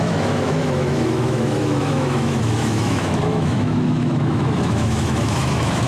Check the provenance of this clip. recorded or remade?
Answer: remade